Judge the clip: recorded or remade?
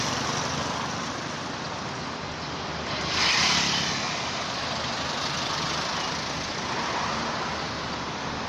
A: recorded